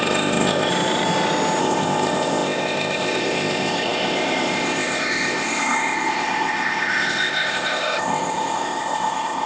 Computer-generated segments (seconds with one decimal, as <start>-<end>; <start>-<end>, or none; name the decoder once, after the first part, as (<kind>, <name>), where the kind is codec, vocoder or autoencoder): 0.0-0.7 (codec, ZipCodec); 1.6-9.5